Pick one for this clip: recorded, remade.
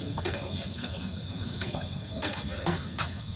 remade